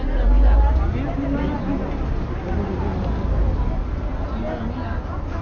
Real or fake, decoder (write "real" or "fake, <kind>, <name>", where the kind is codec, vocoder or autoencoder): real